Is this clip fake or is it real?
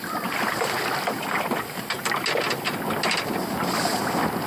real